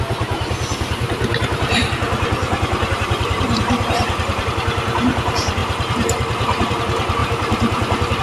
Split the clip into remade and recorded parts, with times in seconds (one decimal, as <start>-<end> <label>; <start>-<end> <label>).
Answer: 0.0-2.4 recorded; 2.4-4.4 remade; 4.4-5.6 recorded; 5.6-6.8 remade; 6.8-7.2 recorded; 7.2-8.2 remade